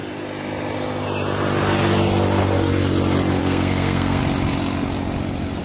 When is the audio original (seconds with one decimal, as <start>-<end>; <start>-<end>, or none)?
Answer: 0.0-3.4; 4.2-5.6